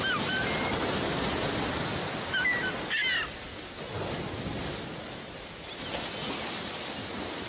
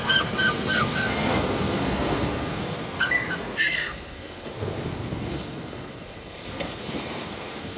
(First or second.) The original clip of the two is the first